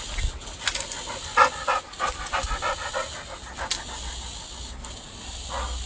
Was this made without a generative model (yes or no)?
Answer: yes